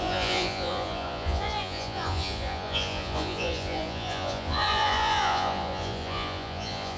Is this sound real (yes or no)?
no